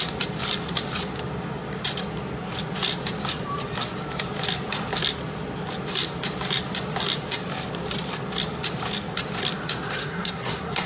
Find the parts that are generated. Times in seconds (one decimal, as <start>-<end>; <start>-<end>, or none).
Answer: 10.0-10.9